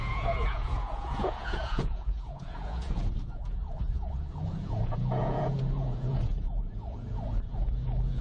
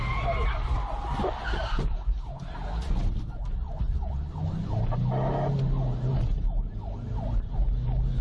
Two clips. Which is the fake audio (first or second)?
first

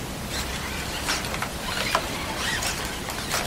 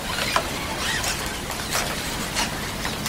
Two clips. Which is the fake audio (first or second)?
first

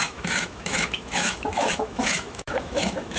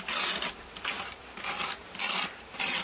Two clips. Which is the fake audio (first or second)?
first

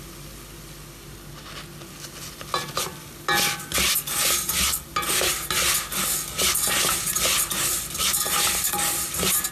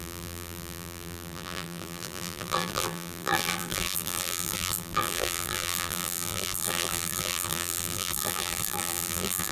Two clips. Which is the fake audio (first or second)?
second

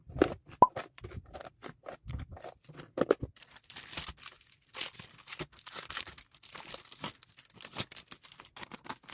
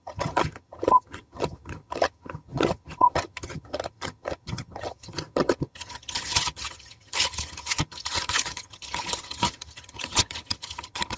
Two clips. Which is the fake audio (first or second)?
second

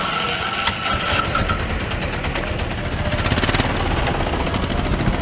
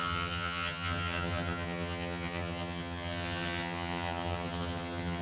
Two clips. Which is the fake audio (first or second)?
second